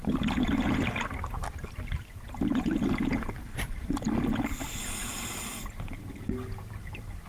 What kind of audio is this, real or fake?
real